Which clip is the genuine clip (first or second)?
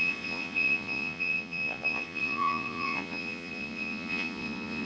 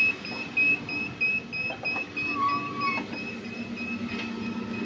second